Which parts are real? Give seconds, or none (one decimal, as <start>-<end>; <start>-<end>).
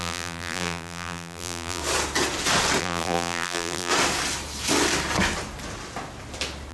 1.8-2.8; 3.9-6.7